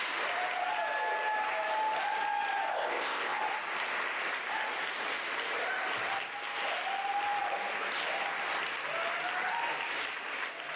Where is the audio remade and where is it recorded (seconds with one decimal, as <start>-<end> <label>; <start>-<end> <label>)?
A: 0.0-2.7 recorded; 2.7-3.4 remade; 3.4-10.8 recorded

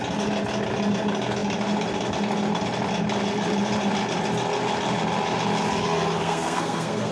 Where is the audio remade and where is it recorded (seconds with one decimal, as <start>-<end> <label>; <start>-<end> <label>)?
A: 0.0-6.2 recorded; 6.2-7.1 remade

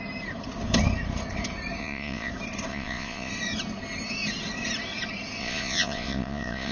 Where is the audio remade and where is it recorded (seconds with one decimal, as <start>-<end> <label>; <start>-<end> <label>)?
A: 0.0-1.8 recorded; 1.8-2.3 remade; 2.3-2.7 recorded; 2.7-3.3 remade; 3.3-5.4 recorded; 5.4-6.7 remade